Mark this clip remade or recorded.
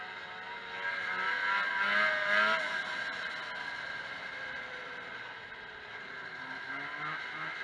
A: recorded